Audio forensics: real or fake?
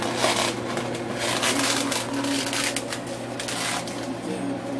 real